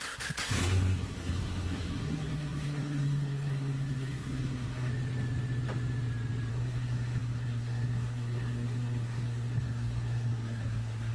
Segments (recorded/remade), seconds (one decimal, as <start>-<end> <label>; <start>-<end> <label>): 0.0-4.9 remade; 4.9-6.5 recorded; 6.5-11.1 remade